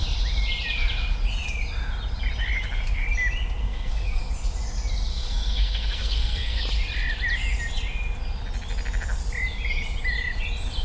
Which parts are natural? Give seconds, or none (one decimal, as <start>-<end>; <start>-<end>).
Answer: 0.0-3.6; 4.2-5.1; 6.6-10.8